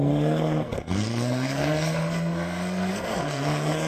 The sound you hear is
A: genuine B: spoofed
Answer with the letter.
B